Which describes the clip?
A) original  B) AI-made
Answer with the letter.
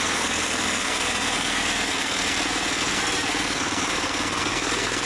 B